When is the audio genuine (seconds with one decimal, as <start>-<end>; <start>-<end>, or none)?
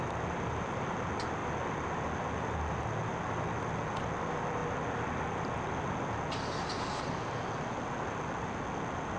0.0-9.2